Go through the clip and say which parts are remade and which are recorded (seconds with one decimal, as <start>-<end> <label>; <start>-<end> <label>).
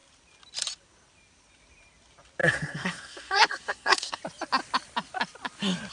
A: 0.0-2.4 recorded; 2.4-4.2 remade; 4.2-5.9 recorded